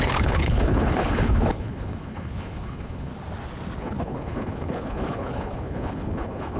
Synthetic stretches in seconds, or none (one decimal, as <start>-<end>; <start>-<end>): 0.0-3.1; 3.8-6.6